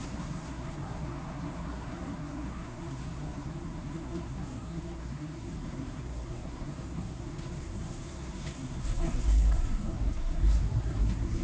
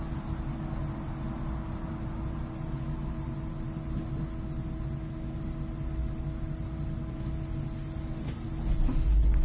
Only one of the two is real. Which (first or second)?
second